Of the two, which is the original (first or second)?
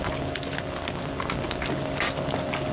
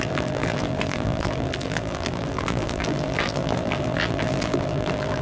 first